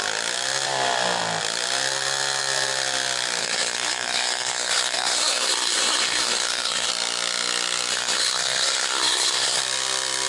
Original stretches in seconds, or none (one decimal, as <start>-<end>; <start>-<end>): 0.0-3.4; 6.9-7.9; 9.6-10.3